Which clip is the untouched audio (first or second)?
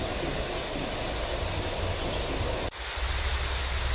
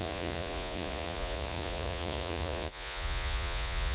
first